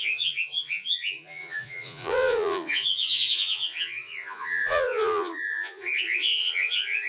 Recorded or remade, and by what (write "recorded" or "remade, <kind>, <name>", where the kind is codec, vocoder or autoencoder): remade, vocoder, Vocos